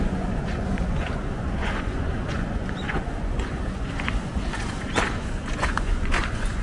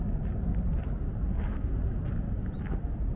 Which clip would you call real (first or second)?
second